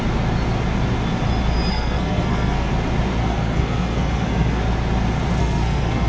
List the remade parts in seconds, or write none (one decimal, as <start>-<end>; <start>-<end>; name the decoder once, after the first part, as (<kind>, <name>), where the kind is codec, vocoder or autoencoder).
1.7-2.7 (codec, SNAC); 3.2-4.6; 5.4-6.1